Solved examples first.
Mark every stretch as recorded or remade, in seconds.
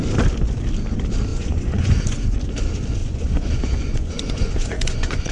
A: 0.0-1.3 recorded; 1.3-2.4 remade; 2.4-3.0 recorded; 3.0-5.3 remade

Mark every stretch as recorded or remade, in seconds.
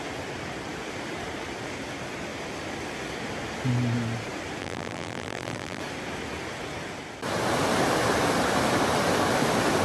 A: 0.0-4.6 recorded; 4.6-5.8 remade; 5.8-9.8 recorded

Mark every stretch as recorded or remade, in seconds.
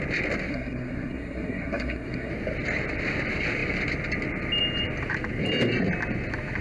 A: 0.0-0.5 recorded; 0.5-2.3 remade; 2.3-6.6 recorded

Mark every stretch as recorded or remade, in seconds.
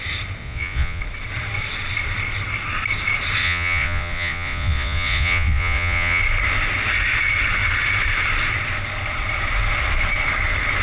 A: 0.0-0.4 recorded; 0.4-1.0 remade; 1.0-3.4 recorded; 3.4-6.2 remade; 6.2-10.8 recorded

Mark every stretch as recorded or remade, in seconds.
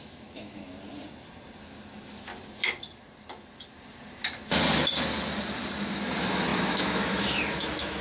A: 0.0-0.6 remade; 0.6-1.6 recorded; 1.6-2.3 remade; 2.3-5.9 recorded; 5.9-8.0 remade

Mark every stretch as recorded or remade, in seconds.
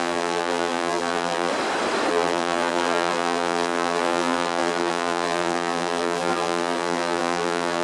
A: 0.0-1.5 remade; 1.5-2.1 recorded; 2.1-7.8 remade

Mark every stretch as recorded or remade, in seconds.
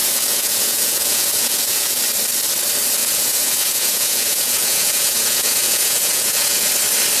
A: 0.0-2.0 remade; 2.0-3.0 recorded; 3.0-6.7 remade; 6.7-7.2 recorded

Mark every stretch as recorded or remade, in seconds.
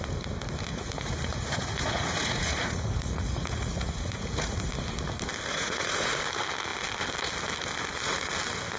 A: 0.0-0.7 recorded; 0.7-4.6 remade; 4.6-5.5 recorded; 5.5-6.2 remade; 6.2-8.8 recorded